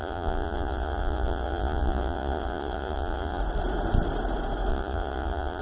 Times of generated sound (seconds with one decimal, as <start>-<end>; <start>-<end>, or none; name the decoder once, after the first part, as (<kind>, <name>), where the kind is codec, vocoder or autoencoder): 0.0-3.4 (vocoder, Vocos); 4.7-5.6